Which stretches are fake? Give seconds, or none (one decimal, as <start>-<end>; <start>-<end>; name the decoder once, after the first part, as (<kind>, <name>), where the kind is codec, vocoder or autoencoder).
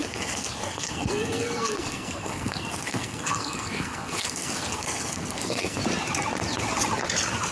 0.0-5.8 (codec, SNAC)